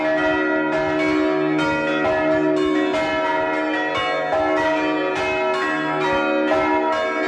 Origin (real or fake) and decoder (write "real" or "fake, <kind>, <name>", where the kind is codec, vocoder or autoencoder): real